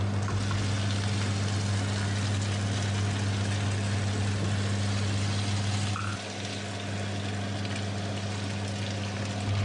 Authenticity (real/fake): real